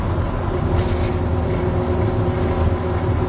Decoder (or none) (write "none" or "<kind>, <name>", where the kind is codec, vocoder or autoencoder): none